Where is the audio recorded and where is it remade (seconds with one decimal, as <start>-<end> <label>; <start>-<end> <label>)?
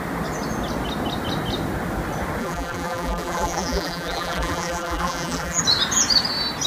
0.0-2.4 recorded; 2.4-5.6 remade; 5.6-6.7 recorded